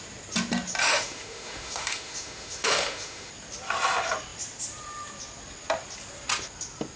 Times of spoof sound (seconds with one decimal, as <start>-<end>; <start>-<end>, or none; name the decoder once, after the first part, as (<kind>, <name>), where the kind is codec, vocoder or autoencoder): 0.8-3.3 (autoencoder, DAC-VAE)